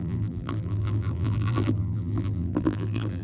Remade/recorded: remade